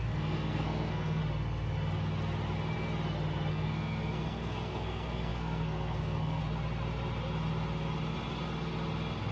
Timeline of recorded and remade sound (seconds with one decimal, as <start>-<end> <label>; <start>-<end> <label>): 0.0-1.2 remade; 1.2-3.5 recorded; 3.5-6.4 remade; 6.4-9.3 recorded